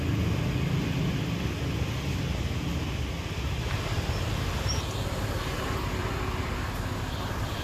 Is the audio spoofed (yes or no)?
no